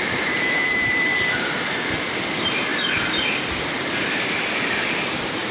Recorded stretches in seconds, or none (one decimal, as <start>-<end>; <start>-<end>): 1.1-2.3; 2.7-3.8